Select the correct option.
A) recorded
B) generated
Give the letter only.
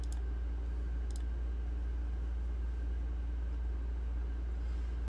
A